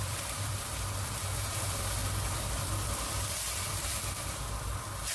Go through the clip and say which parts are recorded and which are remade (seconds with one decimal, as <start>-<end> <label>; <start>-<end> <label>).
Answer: 0.0-3.9 remade; 3.9-5.1 recorded